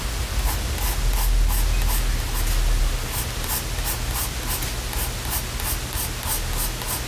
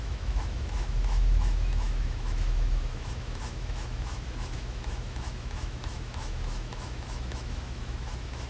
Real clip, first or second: first